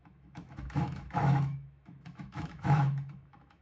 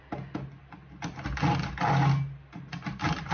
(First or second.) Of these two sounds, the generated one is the first